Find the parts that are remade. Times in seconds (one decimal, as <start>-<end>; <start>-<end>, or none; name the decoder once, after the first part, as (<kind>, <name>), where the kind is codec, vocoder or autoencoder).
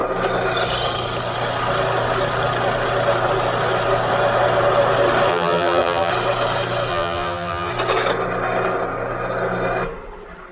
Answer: 5.3-6.1 (vocoder, BigVGAN v2); 6.9-7.7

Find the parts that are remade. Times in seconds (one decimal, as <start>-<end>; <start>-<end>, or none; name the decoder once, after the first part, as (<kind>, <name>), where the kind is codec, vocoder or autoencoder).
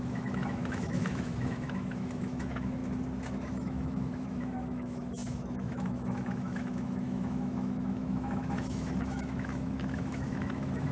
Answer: 0.0-2.8 (autoencoder, DAC-VAE); 3.3-10.9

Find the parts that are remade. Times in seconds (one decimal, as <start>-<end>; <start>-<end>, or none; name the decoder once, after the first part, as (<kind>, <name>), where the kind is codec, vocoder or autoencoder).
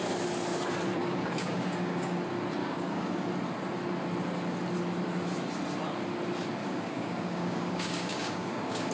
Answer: 1.0-2.2 (codec, DAC); 2.6-3.3; 6.6-8.9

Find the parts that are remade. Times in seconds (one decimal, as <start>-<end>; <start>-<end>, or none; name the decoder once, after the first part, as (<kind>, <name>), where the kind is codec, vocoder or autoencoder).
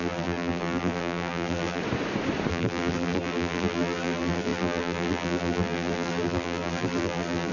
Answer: 0.0-1.8 (vocoder, BigVGAN v2); 2.5-7.5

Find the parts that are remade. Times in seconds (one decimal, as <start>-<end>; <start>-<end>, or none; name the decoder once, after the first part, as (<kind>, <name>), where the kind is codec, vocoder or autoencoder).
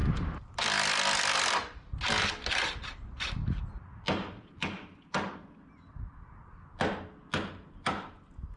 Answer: 0.0-2.3 (vocoder, BigVGAN v2)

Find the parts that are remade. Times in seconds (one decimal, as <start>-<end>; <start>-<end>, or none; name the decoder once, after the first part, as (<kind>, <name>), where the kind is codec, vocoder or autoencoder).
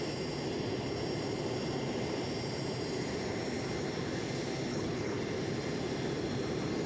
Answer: 4.7-5.2 (codec, HILCodec)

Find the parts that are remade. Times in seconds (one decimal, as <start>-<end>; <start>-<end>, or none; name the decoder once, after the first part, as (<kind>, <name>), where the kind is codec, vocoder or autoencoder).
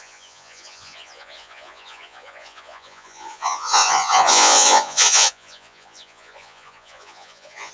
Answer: 0.0-7.7 (vocoder, Vocos)